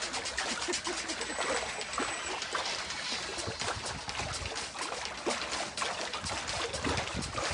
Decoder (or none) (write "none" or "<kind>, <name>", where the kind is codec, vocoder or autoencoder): none